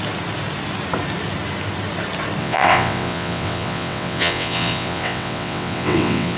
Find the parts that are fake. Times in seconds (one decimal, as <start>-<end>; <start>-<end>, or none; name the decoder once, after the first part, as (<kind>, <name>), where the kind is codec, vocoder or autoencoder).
2.4-6.4 (vocoder, WaveNeXt)